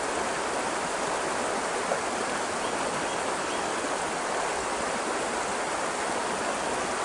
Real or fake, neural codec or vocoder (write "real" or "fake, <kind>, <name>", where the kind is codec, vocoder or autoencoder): real